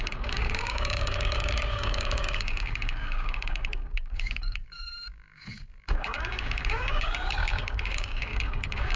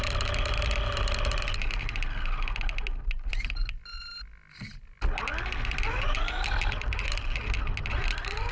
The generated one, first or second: first